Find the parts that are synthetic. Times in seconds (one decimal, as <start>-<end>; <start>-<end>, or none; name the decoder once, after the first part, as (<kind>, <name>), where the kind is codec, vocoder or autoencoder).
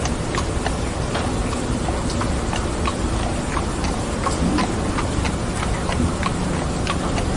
none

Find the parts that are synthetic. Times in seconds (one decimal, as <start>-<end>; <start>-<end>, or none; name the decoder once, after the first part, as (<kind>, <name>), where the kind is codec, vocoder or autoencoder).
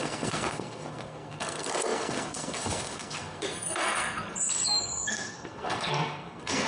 0.0-6.7 (codec, SNAC)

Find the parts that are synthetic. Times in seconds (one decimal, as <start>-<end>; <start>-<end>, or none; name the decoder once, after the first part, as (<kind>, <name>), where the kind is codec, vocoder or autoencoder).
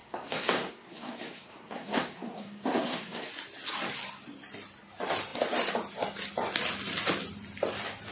0.0-3.3 (codec, SNAC)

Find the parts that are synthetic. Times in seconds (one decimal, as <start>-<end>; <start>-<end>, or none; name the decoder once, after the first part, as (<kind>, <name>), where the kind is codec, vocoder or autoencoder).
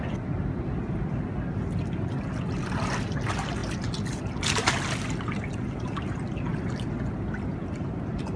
none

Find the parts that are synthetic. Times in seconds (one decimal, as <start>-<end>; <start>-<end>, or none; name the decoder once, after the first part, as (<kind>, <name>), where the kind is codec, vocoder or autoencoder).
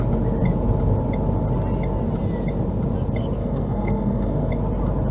3.4-4.5 (codec, SNAC)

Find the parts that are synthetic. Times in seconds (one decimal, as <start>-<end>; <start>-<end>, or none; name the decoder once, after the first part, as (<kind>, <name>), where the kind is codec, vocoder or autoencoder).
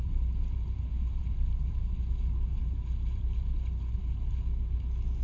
none